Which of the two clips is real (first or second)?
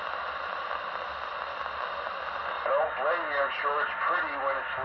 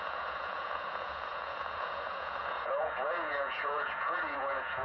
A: first